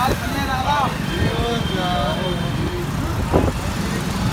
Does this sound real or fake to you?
real